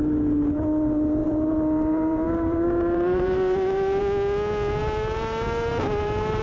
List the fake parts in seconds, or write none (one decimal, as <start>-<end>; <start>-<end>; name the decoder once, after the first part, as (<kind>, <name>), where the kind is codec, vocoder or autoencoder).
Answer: 1.2-4.0 (vocoder, BigVGAN v2); 4.8-6.4